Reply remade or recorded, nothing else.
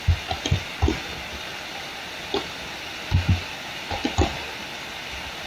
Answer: remade